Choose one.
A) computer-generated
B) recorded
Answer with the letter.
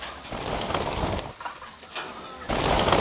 B